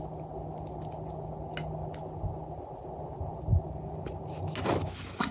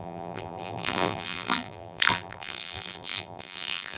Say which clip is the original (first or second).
first